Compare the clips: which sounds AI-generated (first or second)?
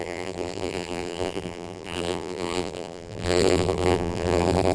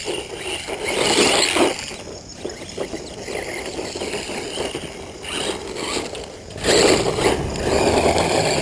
first